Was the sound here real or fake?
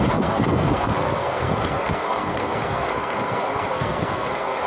fake